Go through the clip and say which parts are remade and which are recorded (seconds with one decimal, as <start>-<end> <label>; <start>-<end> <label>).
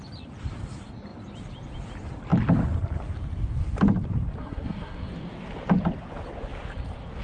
0.0-4.4 recorded; 4.4-5.1 remade; 5.1-7.2 recorded